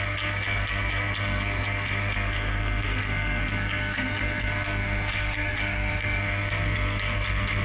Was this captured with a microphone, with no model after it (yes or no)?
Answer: no